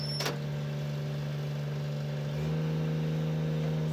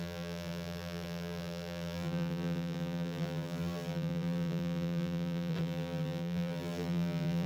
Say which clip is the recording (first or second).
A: first